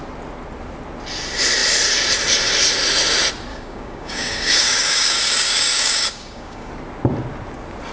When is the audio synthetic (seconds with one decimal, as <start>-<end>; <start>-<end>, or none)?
3.5-6.7